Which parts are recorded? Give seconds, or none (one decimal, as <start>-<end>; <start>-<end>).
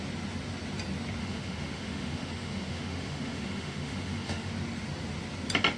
0.0-1.2; 4.5-5.8